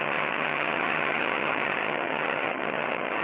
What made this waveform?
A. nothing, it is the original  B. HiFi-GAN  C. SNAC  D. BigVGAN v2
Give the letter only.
B